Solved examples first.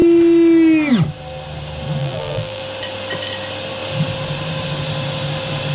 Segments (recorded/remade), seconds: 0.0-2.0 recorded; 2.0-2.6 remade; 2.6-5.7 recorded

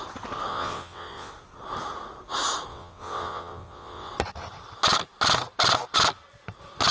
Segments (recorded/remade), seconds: 0.0-0.5 recorded; 0.5-1.3 remade; 1.3-2.7 recorded; 2.7-4.1 remade; 4.1-6.9 recorded